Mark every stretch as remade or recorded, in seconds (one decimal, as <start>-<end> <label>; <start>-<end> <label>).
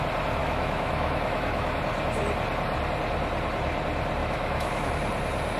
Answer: 0.0-0.4 recorded; 0.4-1.8 remade; 1.8-4.2 recorded; 4.2-4.9 remade; 4.9-5.6 recorded